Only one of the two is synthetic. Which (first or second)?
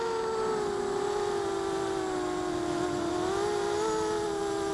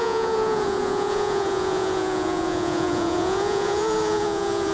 second